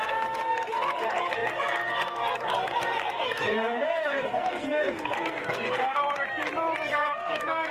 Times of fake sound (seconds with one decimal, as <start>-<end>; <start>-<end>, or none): 0.0-6.0; 6.9-7.7